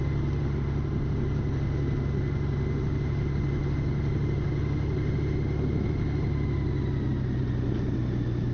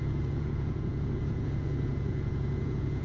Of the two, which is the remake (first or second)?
second